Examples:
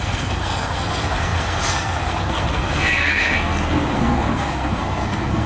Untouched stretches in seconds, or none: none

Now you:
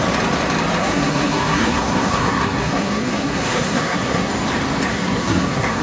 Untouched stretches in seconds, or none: 0.0-0.8; 4.3-4.9

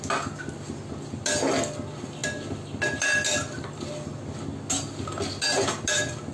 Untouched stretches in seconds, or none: 0.0-6.3

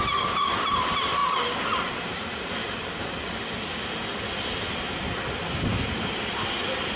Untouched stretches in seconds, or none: 0.0-7.0

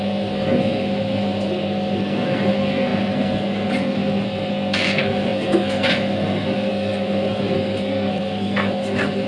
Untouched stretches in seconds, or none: none

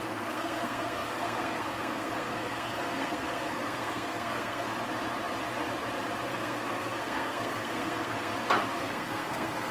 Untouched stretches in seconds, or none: 4.7-6.3; 8.3-8.8